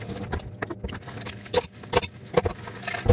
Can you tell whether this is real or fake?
real